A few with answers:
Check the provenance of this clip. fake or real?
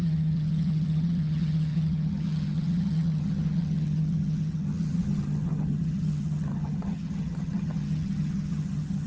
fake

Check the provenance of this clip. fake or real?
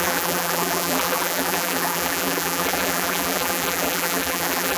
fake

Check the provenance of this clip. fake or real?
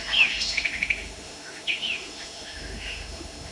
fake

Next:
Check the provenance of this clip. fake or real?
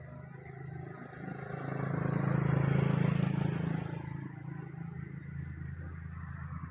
real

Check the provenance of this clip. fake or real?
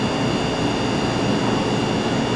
real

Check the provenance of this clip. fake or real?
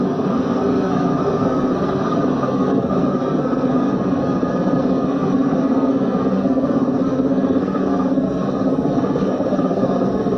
fake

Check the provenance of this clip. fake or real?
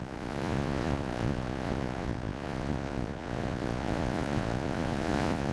fake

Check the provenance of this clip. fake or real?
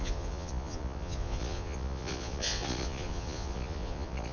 fake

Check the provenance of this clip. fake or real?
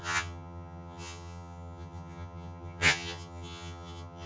fake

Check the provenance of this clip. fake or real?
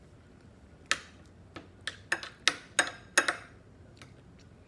real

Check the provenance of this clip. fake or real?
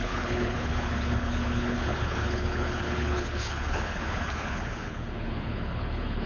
fake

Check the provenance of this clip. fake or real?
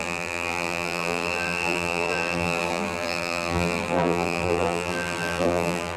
fake